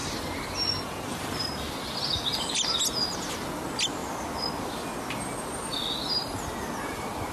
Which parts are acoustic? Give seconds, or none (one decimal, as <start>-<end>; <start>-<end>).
0.0-7.3